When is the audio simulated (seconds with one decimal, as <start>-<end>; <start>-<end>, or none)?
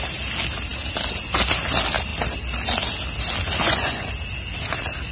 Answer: 3.6-4.1